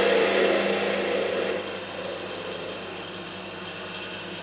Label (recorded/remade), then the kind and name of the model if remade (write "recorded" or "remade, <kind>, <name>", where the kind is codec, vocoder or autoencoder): recorded